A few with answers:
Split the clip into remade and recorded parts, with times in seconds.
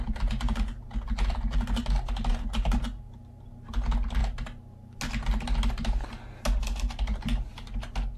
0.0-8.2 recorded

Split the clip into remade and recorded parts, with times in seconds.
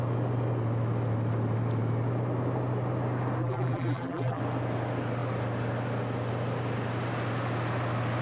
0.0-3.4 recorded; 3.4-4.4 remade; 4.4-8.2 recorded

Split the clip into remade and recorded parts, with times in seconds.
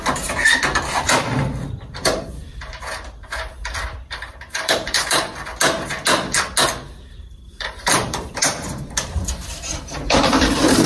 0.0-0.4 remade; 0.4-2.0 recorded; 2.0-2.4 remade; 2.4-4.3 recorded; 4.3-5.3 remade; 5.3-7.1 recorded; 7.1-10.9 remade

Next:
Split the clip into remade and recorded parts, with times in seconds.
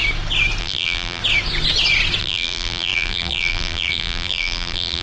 0.0-0.6 recorded; 0.6-1.2 remade; 1.2-2.2 recorded; 2.2-5.0 remade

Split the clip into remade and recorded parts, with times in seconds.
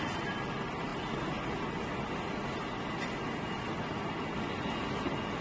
0.0-5.4 recorded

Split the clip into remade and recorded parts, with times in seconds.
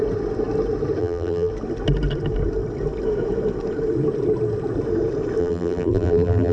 0.0-1.0 recorded; 1.0-1.5 remade; 1.5-5.4 recorded; 5.4-6.5 remade